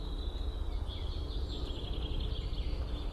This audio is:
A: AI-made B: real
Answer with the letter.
B